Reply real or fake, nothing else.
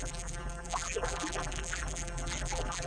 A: fake